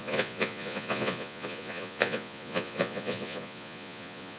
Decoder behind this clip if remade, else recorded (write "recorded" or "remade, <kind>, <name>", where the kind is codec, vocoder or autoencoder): remade, vocoder, Vocos